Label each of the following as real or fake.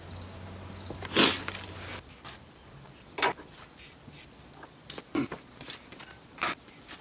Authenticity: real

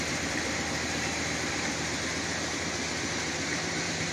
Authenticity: fake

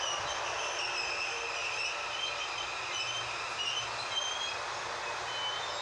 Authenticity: real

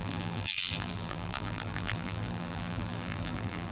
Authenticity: fake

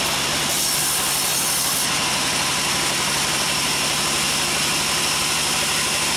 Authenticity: real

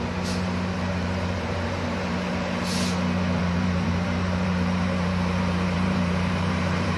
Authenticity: fake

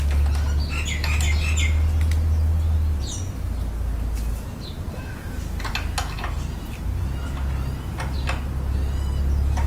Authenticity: real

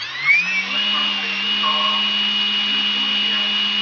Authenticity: real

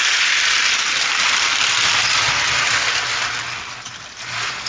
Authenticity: fake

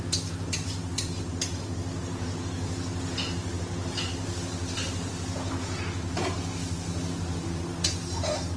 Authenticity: real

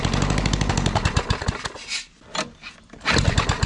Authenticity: real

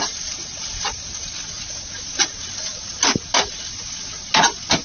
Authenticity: real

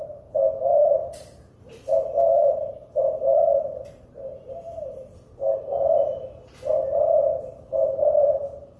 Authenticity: fake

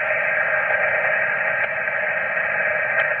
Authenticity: real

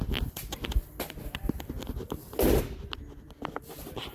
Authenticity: real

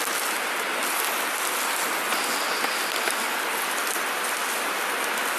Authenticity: real